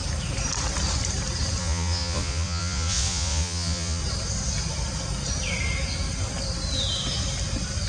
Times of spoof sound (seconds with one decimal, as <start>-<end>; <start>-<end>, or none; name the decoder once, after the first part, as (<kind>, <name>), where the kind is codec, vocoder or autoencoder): 1.6-4.0 (vocoder, Vocos)